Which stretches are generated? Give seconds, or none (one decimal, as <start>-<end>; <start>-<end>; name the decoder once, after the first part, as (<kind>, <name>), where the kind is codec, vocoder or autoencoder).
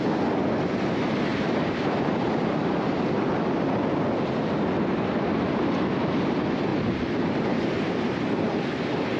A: 1.3-2.9 (vocoder, BigVGAN v2); 6.7-8.4